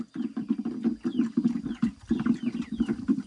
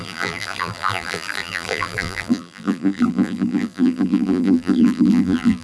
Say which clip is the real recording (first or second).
first